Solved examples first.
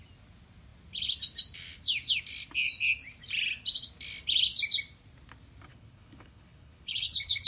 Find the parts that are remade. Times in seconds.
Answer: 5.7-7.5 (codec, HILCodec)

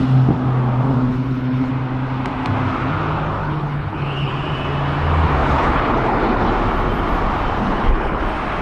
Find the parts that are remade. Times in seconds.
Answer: 1.1-1.7 (codec, HILCodec); 3.4-4.3; 5.4-6.5; 7.6-8.2

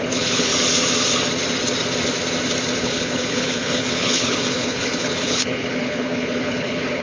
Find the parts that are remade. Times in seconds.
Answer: 0.0-0.5 (codec, HILCodec); 2.8-7.0

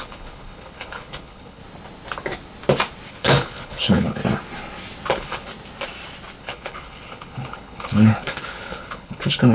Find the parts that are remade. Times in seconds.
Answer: 0.0-1.6 (codec, HILCodec); 3.1-4.2; 5.1-5.5; 6.4-9.5

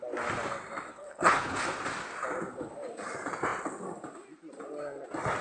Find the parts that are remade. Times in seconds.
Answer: 0.9-1.6 (codec, HILCodec)

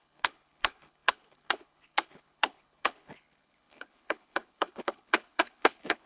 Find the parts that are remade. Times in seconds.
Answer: 0.0-6.1 (codec, HILCodec)

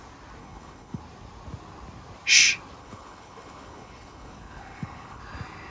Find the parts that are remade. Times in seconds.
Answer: 0.4-1.0 (codec, HILCodec); 2.8-5.2